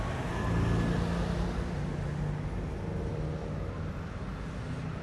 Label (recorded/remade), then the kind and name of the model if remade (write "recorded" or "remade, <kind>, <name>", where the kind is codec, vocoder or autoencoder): recorded